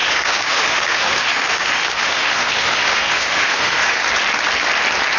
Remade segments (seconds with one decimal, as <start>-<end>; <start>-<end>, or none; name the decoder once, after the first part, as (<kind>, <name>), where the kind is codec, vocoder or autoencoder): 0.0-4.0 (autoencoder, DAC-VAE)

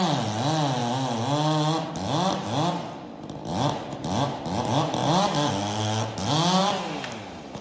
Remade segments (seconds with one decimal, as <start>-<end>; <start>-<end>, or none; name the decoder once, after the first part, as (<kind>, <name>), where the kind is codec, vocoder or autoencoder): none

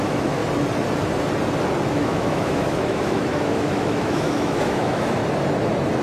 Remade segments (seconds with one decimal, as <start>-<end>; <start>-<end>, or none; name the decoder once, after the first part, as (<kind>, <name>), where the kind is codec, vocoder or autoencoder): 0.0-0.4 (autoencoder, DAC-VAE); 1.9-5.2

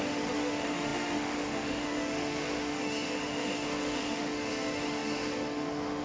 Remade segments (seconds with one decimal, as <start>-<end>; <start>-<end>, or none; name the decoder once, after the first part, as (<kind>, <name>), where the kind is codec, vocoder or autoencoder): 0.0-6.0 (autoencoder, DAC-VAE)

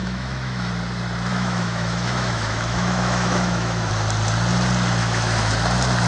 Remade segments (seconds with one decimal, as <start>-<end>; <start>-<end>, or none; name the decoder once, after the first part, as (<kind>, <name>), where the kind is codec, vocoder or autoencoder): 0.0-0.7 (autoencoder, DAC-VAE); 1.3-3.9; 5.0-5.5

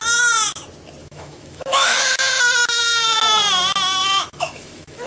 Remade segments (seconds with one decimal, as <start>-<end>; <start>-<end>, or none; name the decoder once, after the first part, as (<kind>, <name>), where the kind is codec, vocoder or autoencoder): 1.0-2.1 (autoencoder, DAC-VAE); 2.6-3.2; 4.0-5.1

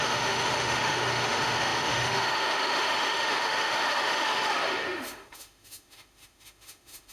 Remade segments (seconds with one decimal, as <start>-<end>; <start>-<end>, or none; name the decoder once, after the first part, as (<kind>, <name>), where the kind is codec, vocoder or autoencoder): 0.0-7.1 (autoencoder, DAC-VAE)